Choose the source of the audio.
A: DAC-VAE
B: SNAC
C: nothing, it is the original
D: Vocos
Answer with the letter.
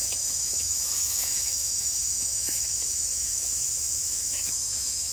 A